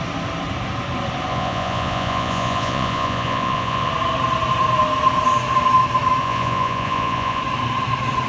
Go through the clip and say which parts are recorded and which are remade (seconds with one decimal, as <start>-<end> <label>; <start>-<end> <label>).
0.0-1.3 recorded; 1.3-3.9 remade; 3.9-6.2 recorded; 6.2-7.4 remade; 7.4-8.3 recorded